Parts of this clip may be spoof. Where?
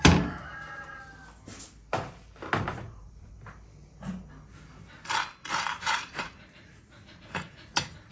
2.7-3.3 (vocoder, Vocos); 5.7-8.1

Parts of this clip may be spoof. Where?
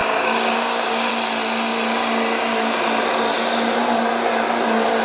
0.0-1.1 (codec, DAC)